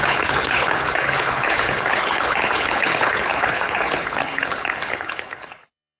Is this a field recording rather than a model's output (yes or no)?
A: no